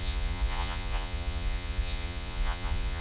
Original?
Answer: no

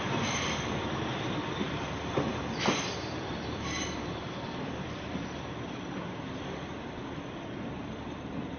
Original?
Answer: no